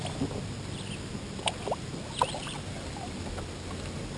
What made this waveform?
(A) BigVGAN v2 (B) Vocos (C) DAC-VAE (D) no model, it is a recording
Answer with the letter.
D